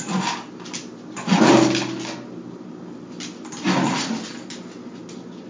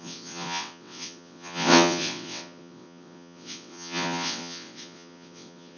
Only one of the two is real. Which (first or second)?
first